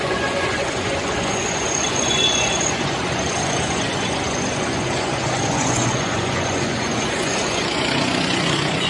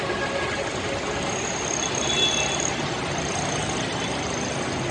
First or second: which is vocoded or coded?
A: first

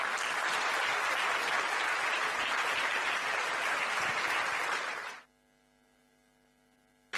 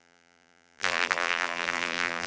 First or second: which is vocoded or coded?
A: second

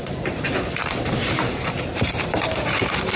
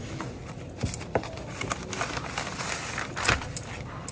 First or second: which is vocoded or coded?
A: first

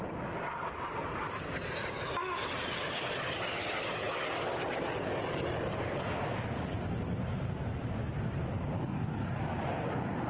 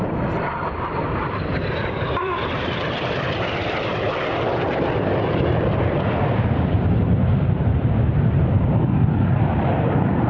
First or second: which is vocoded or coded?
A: second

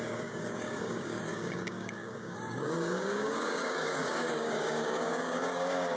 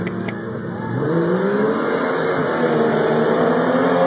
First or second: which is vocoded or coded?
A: first